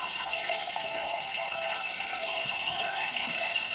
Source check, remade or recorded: remade